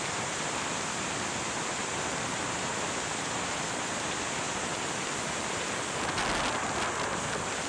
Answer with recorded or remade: recorded